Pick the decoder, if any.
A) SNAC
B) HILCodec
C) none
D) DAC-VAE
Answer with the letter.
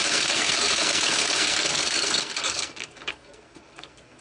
A